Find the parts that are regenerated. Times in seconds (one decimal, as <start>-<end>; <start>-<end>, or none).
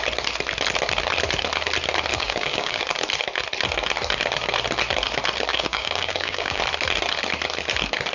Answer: 2.1-2.8; 5.5-6.6